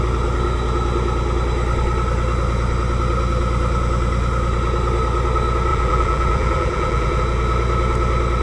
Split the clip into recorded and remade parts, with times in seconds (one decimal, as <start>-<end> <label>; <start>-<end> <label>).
0.0-5.7 recorded; 5.7-7.2 remade; 7.2-8.4 recorded